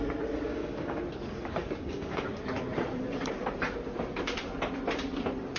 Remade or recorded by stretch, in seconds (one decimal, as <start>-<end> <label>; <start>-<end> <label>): 0.0-0.5 recorded; 0.5-1.0 remade; 1.0-1.6 recorded; 1.6-2.2 remade; 2.2-5.6 recorded